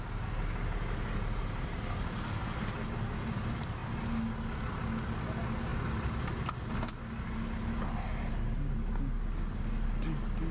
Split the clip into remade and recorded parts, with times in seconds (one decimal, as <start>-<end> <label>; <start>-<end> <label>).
0.0-10.5 recorded